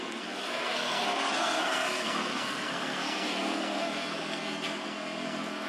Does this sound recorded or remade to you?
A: remade